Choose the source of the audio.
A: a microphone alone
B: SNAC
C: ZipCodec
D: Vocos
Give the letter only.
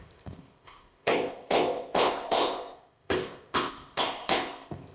C